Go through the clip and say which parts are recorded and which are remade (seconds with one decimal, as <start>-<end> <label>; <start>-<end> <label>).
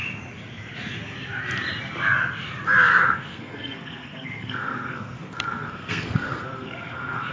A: 0.0-2.9 recorded; 2.9-7.3 remade